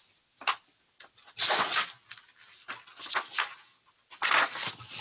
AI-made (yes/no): no